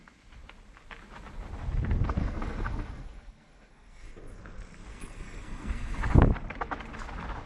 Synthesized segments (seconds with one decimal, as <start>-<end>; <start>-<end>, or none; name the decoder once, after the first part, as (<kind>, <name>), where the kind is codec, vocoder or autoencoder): 2.2-4.4 (codec, SNAC); 4.9-6.2